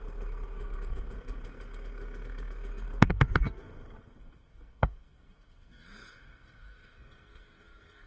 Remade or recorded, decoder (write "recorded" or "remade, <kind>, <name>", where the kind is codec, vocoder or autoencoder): remade, codec, SNAC